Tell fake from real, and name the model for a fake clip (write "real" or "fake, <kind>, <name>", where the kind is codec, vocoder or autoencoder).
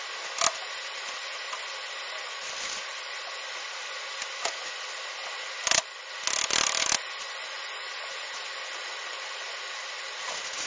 real